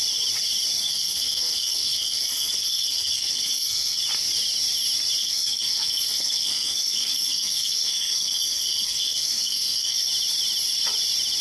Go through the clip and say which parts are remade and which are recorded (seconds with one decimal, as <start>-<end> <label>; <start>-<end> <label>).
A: 0.0-0.8 recorded; 0.8-4.0 remade; 4.0-5.2 recorded; 5.2-10.1 remade; 10.1-11.4 recorded